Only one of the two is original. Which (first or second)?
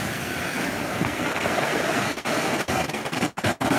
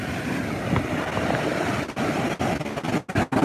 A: second